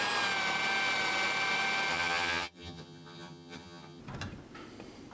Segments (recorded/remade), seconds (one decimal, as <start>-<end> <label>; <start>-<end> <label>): 0.0-1.9 recorded; 1.9-4.0 remade; 4.0-5.1 recorded